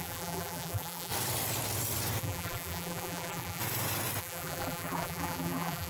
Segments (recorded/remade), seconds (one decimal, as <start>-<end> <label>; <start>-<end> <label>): 0.0-1.1 remade; 1.1-2.2 recorded; 2.2-3.6 remade; 3.6-4.2 recorded; 4.2-5.9 remade

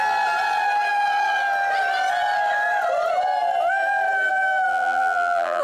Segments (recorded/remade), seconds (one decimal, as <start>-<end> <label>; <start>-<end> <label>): 0.0-4.7 recorded; 4.7-5.6 remade